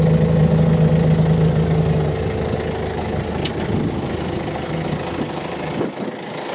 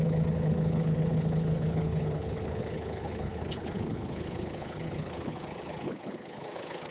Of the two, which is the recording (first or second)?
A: first